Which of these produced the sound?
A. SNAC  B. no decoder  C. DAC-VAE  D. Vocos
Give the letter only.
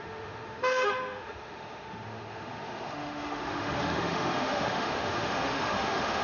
C